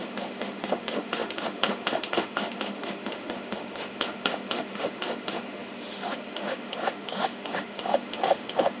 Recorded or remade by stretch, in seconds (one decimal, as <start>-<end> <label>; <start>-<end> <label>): 0.0-8.8 remade